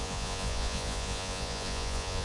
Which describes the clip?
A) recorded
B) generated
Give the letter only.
B